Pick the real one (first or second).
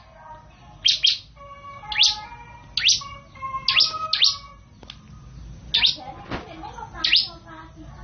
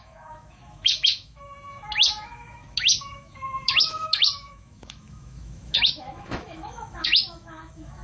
first